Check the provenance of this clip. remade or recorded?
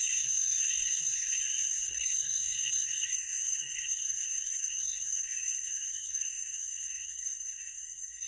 remade